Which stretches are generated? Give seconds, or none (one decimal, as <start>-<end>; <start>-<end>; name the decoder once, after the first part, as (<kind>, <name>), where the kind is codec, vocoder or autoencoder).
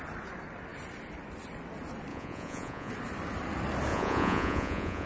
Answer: 2.1-2.9 (vocoder, Vocos); 3.9-5.1